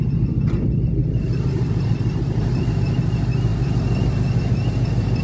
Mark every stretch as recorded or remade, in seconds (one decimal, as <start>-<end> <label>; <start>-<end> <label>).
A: 0.0-1.0 recorded; 1.0-1.9 remade; 1.9-5.2 recorded